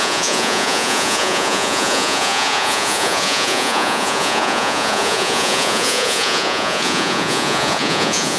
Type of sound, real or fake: fake